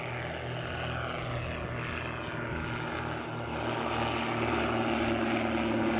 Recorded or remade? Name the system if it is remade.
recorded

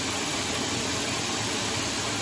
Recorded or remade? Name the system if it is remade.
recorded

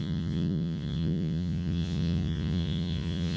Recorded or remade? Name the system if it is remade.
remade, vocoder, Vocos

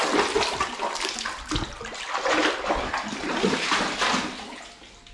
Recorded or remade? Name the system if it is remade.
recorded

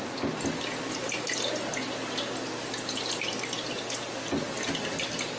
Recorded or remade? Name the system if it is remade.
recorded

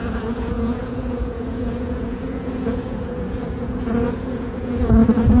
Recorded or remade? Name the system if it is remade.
remade, vocoder, Vocos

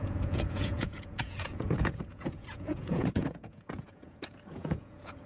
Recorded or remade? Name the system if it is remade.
remade, vocoder, Vocos